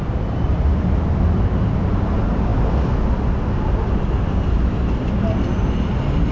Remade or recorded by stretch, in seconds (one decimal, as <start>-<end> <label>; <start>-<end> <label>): 0.0-6.3 recorded